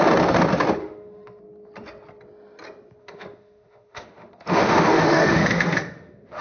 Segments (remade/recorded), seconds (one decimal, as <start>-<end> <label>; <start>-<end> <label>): 0.0-0.8 recorded; 0.8-1.4 remade; 1.4-3.0 recorded; 3.0-6.4 remade